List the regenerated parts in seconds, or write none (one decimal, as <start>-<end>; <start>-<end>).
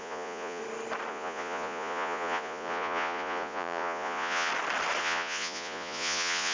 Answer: 0.0-0.6; 1.1-4.5; 5.0-6.5